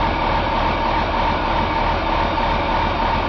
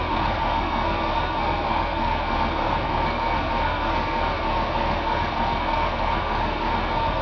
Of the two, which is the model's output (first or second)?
second